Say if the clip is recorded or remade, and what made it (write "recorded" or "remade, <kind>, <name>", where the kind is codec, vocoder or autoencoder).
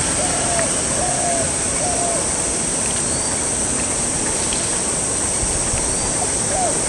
recorded